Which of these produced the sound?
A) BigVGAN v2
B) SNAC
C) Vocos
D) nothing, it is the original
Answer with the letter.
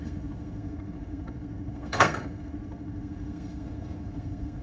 B